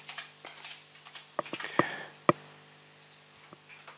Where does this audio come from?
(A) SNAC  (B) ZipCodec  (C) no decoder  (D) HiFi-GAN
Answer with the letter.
C